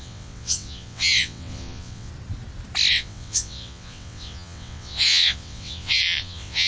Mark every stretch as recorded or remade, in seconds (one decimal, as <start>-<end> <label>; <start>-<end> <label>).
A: 0.0-2.1 remade; 2.1-2.9 recorded; 2.9-6.7 remade